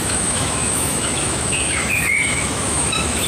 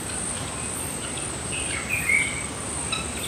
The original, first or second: second